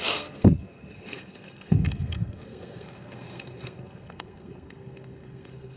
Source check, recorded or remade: remade